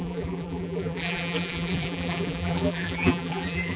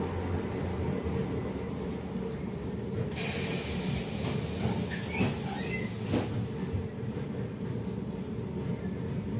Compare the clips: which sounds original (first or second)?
second